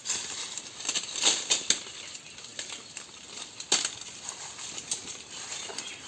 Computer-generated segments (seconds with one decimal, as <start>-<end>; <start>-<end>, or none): 0.0-1.6